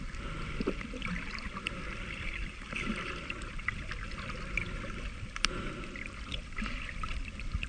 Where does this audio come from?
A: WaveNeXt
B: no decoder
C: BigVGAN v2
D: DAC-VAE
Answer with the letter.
B